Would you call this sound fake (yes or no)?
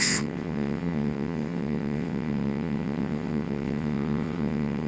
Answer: yes